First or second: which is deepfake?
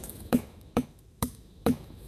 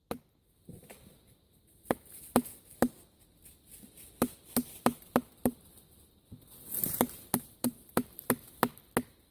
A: first